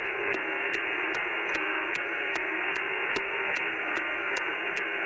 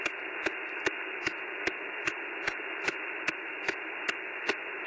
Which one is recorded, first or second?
second